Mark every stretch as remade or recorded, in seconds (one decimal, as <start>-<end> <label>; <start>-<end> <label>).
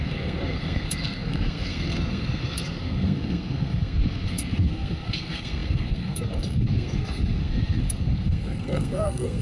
0.0-9.4 remade